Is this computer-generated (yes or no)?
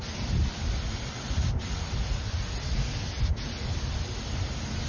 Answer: no